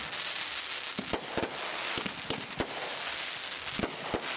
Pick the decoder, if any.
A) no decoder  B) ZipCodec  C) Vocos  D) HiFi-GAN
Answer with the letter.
A